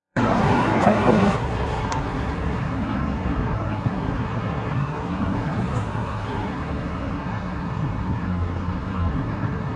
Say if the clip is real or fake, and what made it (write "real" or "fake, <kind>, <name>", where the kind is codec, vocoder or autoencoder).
fake, codec, SNAC